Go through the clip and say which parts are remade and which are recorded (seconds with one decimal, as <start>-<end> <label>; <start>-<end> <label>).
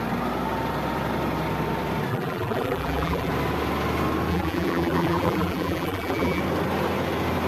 0.0-2.1 recorded; 2.1-3.3 remade; 3.3-4.3 recorded; 4.3-6.4 remade; 6.4-7.5 recorded